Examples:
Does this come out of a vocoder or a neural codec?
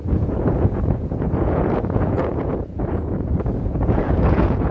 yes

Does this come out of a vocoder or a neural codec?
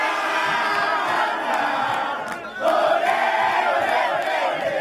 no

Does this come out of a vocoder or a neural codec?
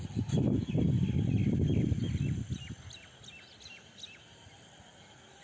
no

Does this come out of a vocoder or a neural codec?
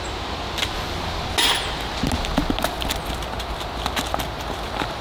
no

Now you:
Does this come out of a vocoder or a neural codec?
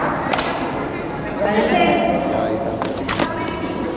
no